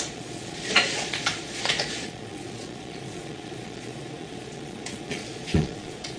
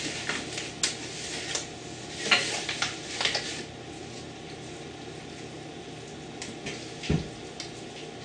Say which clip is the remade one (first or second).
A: first